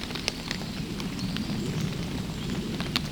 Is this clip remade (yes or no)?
no